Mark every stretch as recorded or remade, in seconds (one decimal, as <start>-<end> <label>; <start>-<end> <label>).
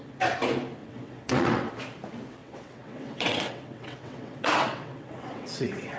0.0-0.8 recorded; 0.8-1.7 remade; 1.7-2.4 recorded; 2.4-6.0 remade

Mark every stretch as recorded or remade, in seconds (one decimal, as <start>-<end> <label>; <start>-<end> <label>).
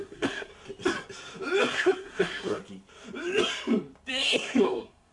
0.0-0.5 remade; 0.5-1.6 recorded; 1.6-2.6 remade; 2.6-4.1 recorded; 4.1-5.1 remade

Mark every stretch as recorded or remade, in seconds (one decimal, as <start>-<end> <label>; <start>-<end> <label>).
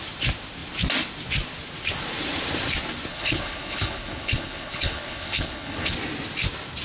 0.0-3.1 recorded; 3.1-5.9 remade; 5.9-6.8 recorded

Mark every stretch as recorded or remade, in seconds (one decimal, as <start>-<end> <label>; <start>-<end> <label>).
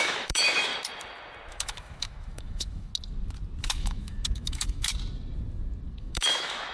0.0-0.7 remade; 0.7-1.5 recorded; 1.5-2.9 remade; 2.9-3.6 recorded; 3.6-4.9 remade; 4.9-6.0 recorded; 6.0-6.7 remade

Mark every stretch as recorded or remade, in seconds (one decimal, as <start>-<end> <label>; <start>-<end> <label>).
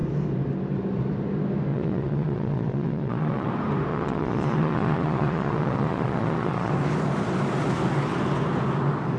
0.0-1.7 recorded; 1.7-3.5 remade; 3.5-3.9 recorded; 3.9-6.7 remade; 6.7-9.2 recorded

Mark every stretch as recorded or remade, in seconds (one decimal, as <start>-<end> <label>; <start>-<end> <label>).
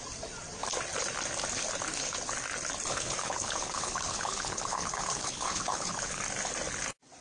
0.0-2.9 recorded; 2.9-6.2 remade; 6.2-7.2 recorded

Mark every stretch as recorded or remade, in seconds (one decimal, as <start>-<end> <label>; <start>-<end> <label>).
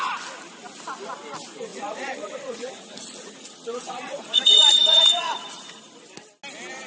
0.0-1.7 recorded; 1.7-5.8 remade; 5.8-6.9 recorded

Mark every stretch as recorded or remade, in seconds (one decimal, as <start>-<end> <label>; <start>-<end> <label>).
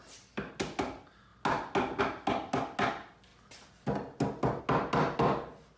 0.0-5.8 recorded